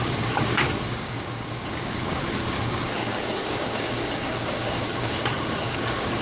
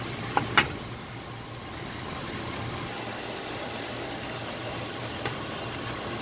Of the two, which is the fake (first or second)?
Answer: first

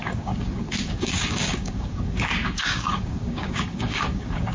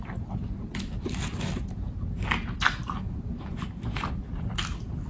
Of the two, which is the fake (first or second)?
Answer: first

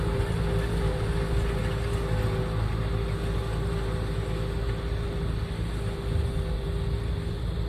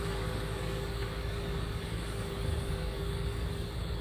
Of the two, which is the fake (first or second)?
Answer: second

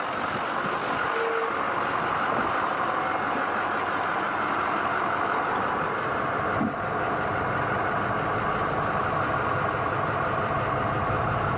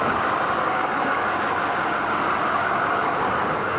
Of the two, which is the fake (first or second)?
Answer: second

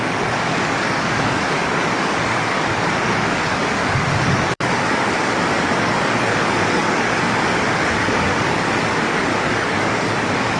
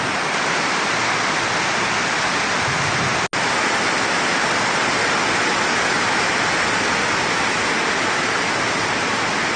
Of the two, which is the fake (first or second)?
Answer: first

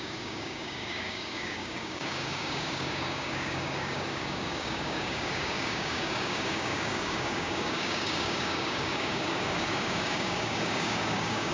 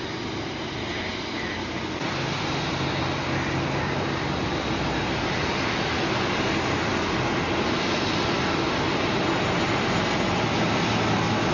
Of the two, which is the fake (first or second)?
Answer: first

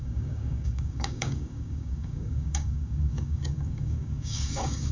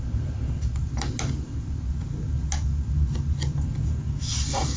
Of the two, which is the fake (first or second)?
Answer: first